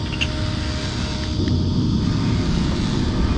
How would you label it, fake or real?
real